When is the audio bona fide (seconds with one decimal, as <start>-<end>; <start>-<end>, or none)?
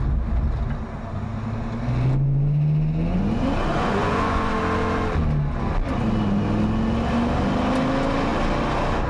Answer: 0.0-3.7; 4.5-9.1